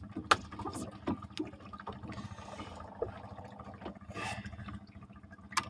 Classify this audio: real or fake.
real